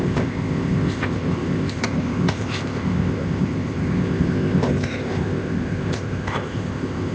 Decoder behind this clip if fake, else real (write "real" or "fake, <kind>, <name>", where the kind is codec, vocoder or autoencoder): fake, codec, ZipCodec